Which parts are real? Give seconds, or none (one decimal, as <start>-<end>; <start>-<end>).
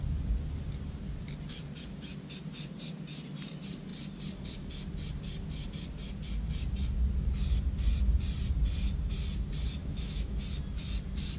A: 0.0-9.8; 10.4-11.4